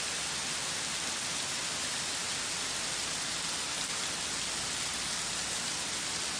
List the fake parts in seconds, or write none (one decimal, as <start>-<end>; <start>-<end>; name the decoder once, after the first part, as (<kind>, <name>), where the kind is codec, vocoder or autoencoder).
none